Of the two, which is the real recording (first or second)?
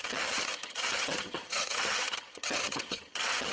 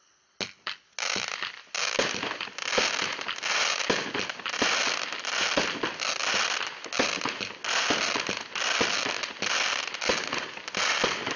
second